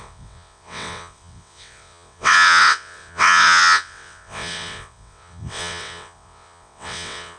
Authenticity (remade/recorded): remade